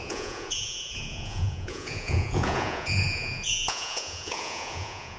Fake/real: fake